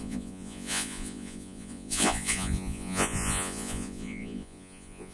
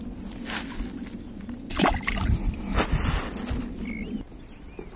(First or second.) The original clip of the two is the second